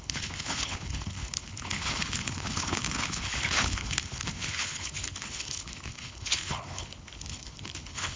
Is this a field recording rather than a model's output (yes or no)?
no